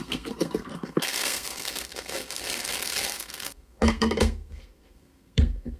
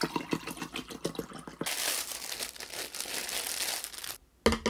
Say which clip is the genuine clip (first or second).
second